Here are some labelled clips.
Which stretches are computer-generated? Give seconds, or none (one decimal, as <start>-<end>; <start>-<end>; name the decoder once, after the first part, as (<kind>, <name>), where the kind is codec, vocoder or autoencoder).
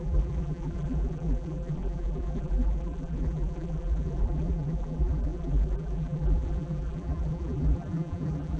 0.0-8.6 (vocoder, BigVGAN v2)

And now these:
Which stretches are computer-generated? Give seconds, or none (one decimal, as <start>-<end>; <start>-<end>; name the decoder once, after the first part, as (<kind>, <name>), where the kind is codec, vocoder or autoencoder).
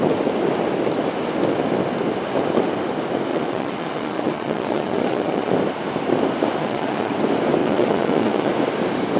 3.3-5.5 (vocoder, Vocos); 6.6-7.1; 7.6-8.5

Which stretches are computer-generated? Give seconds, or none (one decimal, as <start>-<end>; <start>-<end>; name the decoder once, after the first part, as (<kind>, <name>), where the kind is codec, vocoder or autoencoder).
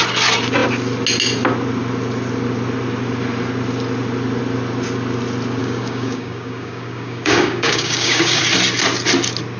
5.6-8.4 (codec, DAC)